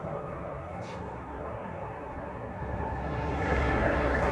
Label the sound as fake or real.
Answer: fake